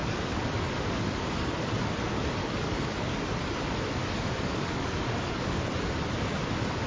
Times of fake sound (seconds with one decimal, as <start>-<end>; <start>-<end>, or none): 0.0-1.6; 2.4-3.2; 4.0-5.7

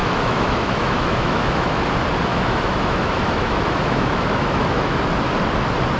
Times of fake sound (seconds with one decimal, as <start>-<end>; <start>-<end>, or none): 0.0-1.8; 2.3-5.0

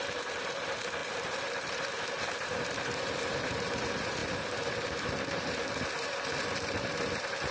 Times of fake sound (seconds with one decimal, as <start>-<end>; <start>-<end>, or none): 0.0-7.5

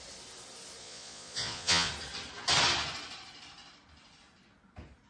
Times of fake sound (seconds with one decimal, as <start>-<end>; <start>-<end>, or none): 0.8-1.9